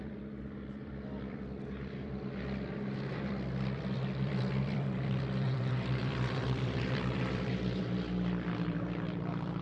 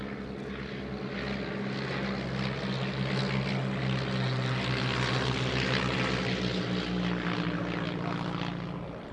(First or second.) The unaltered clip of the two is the second